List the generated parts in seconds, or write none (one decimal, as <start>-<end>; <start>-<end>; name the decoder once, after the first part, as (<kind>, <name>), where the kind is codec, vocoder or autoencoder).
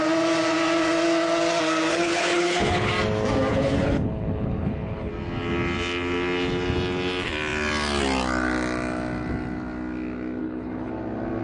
1.9-2.9 (codec, HILCodec); 3.5-5.1; 10.4-10.9